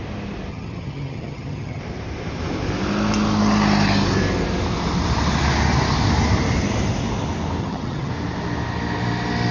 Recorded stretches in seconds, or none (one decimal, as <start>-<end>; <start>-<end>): 0.0-0.5; 1.8-7.6; 8.1-9.5